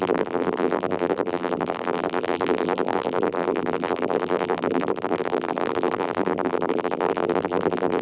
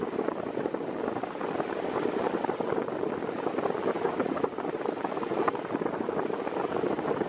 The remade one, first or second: first